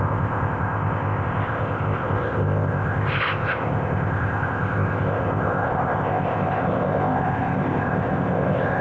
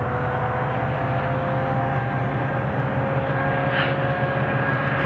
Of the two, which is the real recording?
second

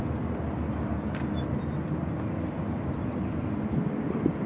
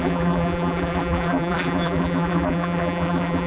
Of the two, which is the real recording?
first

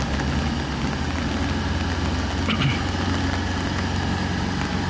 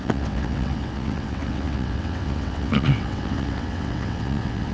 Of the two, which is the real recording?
first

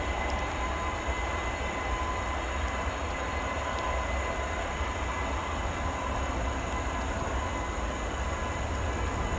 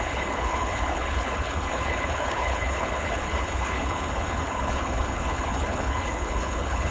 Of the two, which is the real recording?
first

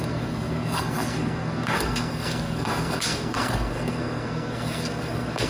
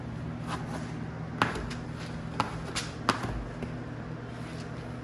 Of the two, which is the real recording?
second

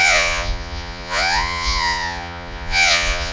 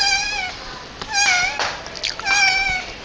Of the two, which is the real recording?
second